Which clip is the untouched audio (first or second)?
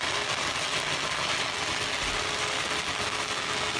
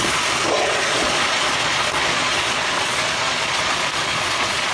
first